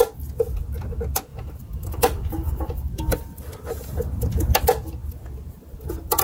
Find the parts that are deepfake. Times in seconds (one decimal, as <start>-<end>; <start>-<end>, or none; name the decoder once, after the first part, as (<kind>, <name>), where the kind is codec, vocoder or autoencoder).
1.3-3.5 (vocoder, BigVGAN v2)